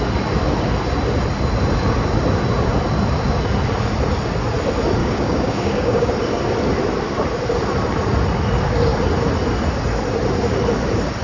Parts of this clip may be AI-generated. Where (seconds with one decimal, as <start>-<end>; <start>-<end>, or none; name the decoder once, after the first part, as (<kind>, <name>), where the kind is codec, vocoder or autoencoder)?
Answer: 5.0-6.1 (codec, DAC)